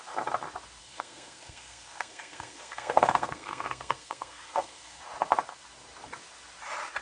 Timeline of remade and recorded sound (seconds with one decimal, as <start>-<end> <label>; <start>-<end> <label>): 0.0-0.8 recorded; 0.8-5.0 remade; 5.0-7.0 recorded